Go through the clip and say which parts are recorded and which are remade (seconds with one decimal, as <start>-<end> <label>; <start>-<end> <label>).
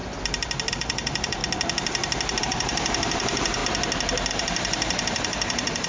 0.0-0.7 recorded; 0.7-1.4 remade; 1.4-2.4 recorded; 2.4-3.6 remade; 3.6-4.3 recorded; 4.3-5.9 remade